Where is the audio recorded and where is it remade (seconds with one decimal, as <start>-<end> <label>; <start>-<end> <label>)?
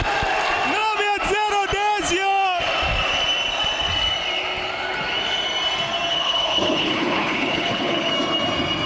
0.0-6.1 recorded; 6.1-8.1 remade; 8.1-8.9 recorded